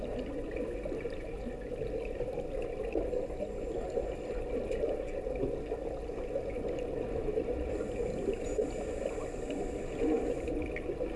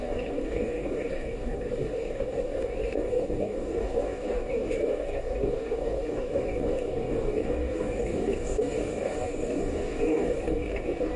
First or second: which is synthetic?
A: second